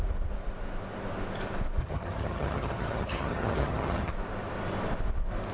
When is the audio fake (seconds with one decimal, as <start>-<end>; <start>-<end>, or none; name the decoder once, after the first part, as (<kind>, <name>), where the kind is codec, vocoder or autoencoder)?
1.8-4.1 (vocoder, HiFi-GAN)